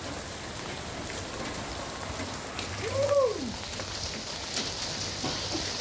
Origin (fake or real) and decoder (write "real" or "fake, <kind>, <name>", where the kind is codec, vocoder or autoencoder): real